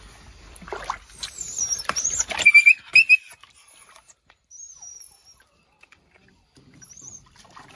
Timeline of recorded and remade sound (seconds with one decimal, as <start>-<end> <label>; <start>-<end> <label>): 0.0-2.9 remade; 2.9-3.6 recorded; 3.6-7.8 remade